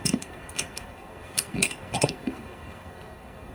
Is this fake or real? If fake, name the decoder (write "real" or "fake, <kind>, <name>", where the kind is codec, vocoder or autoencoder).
fake, codec, SNAC